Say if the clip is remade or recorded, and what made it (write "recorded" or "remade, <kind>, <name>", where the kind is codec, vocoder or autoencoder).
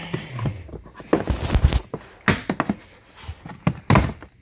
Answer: recorded